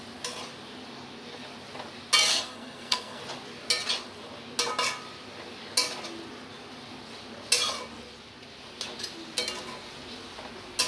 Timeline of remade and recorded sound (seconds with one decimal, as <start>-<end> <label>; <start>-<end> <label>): 0.0-2.3 recorded; 2.3-3.2 remade; 3.2-10.9 recorded

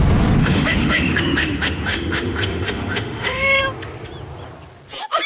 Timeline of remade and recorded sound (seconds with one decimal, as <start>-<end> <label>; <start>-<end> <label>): 0.0-0.4 recorded; 0.4-3.6 remade; 3.6-5.3 recorded